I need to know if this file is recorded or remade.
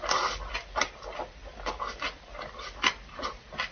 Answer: recorded